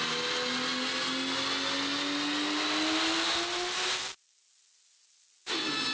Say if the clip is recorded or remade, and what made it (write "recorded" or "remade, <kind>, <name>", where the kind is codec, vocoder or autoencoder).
recorded